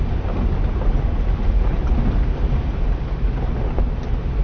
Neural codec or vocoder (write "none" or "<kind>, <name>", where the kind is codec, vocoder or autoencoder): none